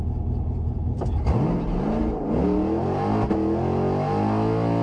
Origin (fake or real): real